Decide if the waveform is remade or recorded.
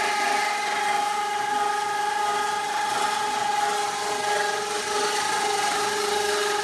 recorded